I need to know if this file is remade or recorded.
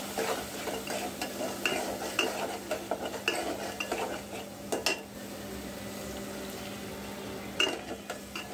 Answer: recorded